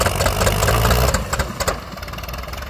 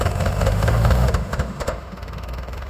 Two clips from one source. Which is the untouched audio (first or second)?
first